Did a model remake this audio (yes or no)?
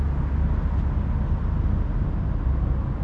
no